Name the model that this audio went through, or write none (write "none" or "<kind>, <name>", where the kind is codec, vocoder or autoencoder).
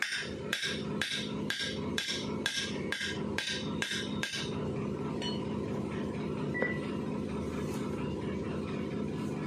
none